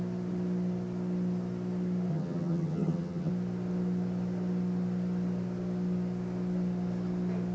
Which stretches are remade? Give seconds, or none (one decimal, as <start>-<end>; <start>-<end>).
2.1-3.3